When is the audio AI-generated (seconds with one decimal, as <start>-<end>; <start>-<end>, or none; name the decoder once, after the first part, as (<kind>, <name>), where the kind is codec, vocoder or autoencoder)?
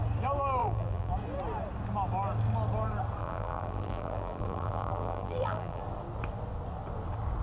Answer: 0.6-1.1 (vocoder, BigVGAN v2); 3.2-5.8